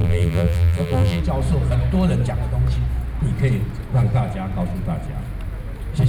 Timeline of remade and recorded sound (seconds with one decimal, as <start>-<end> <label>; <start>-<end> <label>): 0.0-1.2 remade; 1.2-6.1 recorded